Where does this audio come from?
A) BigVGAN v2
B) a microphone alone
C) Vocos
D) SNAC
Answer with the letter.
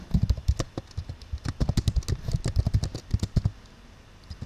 B